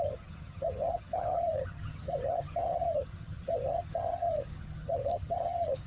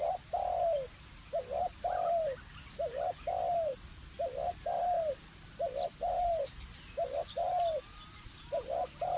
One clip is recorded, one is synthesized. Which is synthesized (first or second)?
first